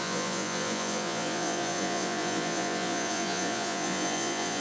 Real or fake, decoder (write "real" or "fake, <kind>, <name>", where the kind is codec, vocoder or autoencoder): fake, vocoder, Vocos